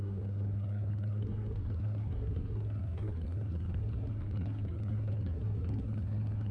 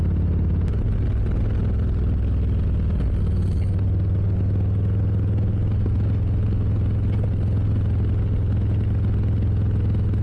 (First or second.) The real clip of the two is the second